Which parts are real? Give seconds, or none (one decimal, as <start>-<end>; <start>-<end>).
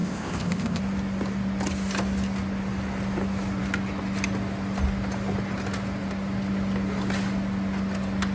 0.8-8.3